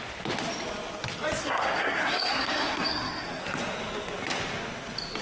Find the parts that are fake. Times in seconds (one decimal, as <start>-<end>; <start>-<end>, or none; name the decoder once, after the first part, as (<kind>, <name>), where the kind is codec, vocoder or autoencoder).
1.4-3.4 (codec, SNAC)